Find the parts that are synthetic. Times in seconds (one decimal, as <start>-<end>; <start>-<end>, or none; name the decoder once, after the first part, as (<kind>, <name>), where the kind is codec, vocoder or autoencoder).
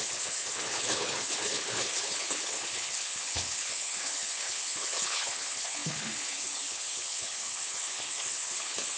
0.0-9.0 (codec, HILCodec)